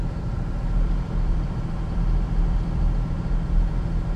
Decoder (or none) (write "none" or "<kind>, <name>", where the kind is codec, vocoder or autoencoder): vocoder, BigVGAN v2